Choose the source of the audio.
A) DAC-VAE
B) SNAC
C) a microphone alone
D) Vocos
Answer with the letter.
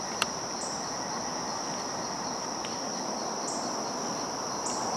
C